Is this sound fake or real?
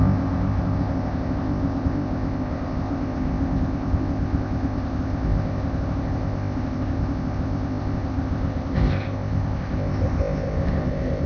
fake